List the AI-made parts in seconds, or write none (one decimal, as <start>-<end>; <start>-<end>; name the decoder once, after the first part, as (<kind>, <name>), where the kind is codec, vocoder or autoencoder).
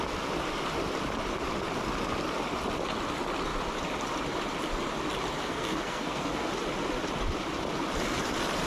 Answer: 5.4-6.5 (codec, SNAC)